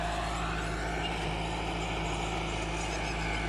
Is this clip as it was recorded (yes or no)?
yes